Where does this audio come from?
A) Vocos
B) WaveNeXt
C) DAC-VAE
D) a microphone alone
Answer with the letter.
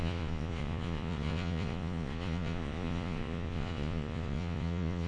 A